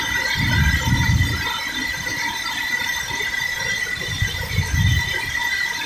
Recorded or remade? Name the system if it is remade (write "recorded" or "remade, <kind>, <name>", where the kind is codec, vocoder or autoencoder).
remade, vocoder, BigVGAN v2